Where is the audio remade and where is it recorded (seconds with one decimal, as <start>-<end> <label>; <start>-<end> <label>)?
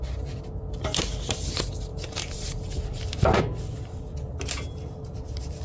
0.0-1.9 recorded; 1.9-3.4 remade; 3.4-5.6 recorded